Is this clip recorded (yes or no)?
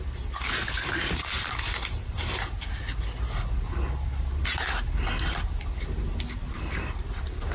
yes